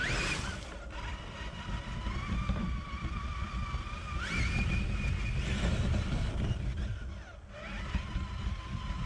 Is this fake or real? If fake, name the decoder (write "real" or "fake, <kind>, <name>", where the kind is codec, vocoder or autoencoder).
real